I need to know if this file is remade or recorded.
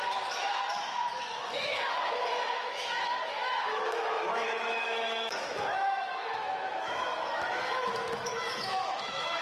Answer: remade